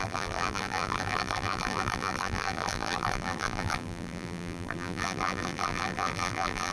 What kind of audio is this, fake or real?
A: fake